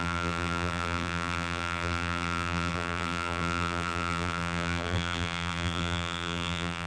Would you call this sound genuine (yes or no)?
no